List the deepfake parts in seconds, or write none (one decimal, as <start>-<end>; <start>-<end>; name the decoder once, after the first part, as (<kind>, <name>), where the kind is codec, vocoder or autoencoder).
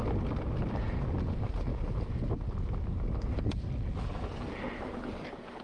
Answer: none